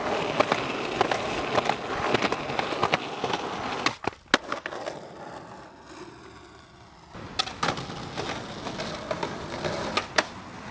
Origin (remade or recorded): recorded